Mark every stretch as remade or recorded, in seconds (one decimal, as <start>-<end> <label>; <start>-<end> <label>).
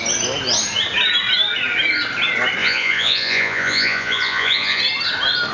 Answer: 0.0-2.6 recorded; 2.6-4.8 remade; 4.8-5.5 recorded